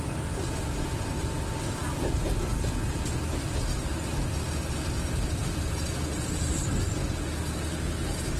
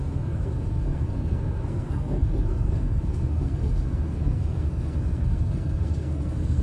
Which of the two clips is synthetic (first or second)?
second